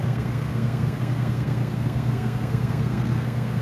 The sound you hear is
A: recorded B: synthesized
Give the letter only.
B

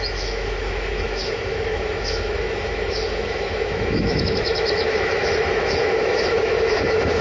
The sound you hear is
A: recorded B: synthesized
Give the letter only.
B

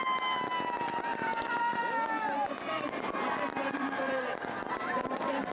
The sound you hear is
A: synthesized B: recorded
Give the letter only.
B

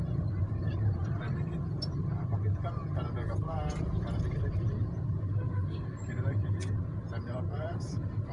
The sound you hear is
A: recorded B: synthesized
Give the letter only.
B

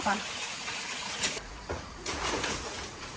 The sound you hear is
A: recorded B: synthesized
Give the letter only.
B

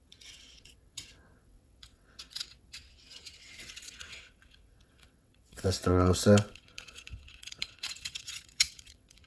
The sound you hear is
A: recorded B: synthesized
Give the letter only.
B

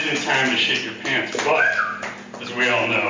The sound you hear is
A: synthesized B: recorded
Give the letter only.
B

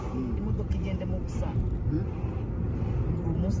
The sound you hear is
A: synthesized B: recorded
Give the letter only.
B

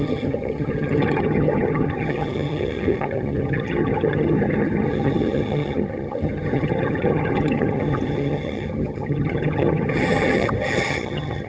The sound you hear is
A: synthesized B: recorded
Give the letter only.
A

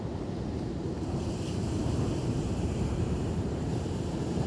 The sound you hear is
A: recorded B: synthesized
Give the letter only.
B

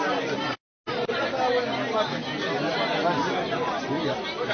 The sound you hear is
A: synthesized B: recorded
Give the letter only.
B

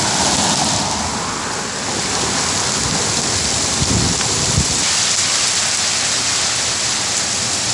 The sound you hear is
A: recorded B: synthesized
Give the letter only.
A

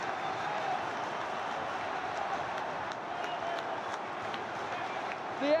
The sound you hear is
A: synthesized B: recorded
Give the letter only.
B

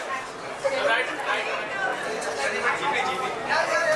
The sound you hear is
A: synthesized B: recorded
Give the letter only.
B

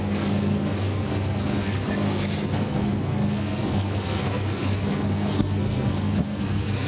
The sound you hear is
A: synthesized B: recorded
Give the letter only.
A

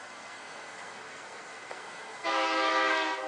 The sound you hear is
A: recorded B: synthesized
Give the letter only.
B